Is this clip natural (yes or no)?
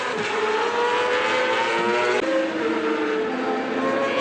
yes